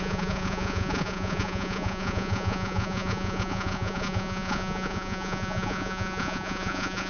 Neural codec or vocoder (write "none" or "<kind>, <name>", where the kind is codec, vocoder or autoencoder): vocoder, Vocos